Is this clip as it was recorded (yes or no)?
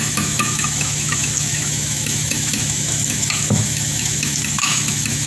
no